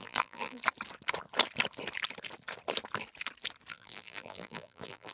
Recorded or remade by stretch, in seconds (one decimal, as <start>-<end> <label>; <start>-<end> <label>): 0.0-0.6 remade; 0.6-3.7 recorded; 3.7-5.1 remade